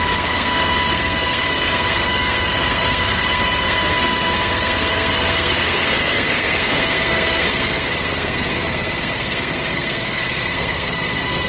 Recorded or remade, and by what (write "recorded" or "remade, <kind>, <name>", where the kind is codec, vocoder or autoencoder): remade, codec, SNAC